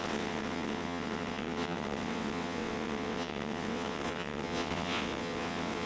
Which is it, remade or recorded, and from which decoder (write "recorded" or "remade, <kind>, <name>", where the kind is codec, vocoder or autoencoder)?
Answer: remade, vocoder, WaveNeXt